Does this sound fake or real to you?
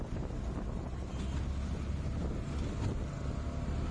real